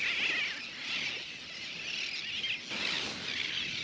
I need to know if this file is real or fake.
real